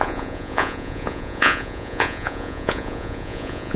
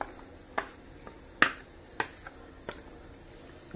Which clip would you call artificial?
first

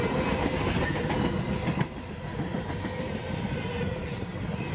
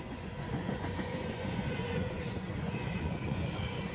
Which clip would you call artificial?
second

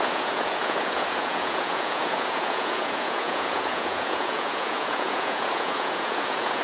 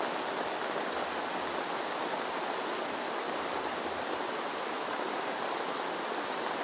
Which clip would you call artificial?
first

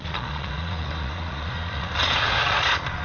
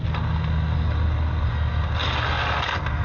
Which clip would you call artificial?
first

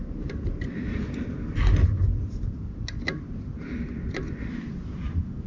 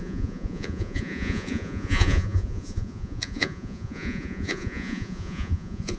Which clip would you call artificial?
second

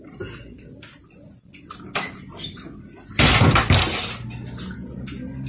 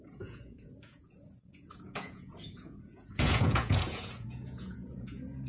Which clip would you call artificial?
second